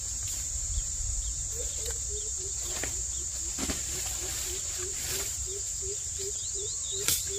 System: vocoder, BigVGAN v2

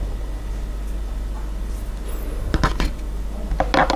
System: none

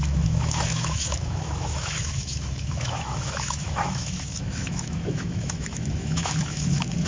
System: autoencoder, DAC-VAE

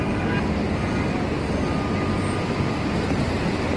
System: none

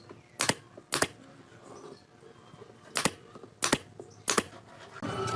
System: none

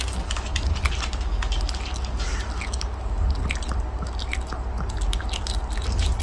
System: none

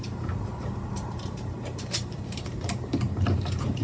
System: vocoder, BigVGAN v2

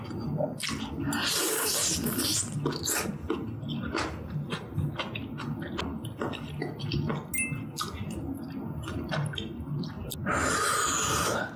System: none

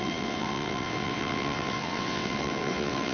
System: vocoder, WaveNeXt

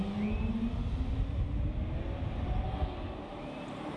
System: none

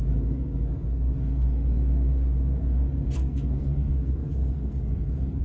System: codec, SNAC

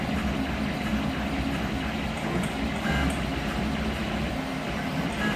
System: none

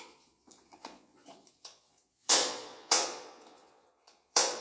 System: vocoder, Vocos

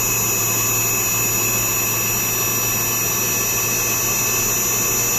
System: none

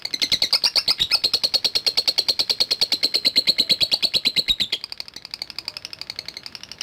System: none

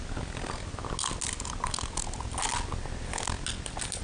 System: none